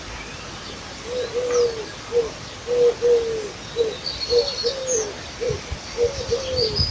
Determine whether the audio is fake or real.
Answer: real